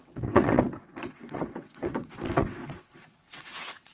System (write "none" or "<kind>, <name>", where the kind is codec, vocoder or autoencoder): vocoder, WaveNeXt